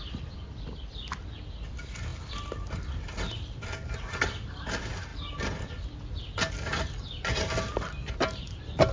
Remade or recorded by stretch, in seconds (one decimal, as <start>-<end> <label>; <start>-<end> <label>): 0.0-8.9 recorded